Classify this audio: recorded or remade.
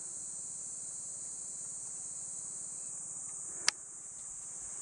recorded